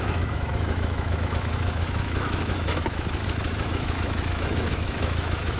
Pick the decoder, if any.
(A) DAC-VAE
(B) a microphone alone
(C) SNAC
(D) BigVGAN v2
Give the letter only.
A